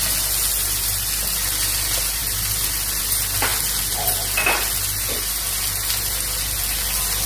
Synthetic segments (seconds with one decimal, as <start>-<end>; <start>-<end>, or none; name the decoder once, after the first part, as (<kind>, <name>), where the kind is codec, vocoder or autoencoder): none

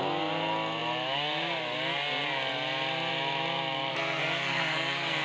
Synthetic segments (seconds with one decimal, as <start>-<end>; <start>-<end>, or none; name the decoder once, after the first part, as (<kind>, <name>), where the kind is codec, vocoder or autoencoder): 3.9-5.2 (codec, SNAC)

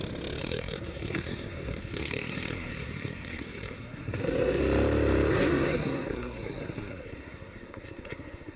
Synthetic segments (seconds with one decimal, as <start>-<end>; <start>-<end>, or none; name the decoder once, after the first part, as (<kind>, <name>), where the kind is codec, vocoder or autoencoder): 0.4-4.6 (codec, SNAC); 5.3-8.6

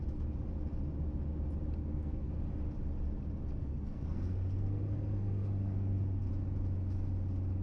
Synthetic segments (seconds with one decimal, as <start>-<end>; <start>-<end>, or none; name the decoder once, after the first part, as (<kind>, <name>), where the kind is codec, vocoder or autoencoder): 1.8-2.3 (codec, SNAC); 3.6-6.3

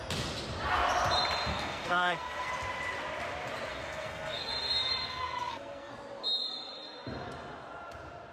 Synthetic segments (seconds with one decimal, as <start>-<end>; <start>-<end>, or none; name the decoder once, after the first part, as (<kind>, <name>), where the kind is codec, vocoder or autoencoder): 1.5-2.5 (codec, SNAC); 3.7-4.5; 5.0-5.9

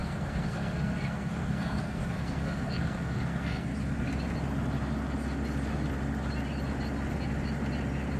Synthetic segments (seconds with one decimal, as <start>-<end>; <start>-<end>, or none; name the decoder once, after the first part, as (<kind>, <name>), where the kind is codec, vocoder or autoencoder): 0.0-3.7 (codec, SNAC)